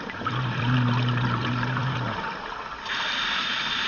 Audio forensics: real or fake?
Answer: fake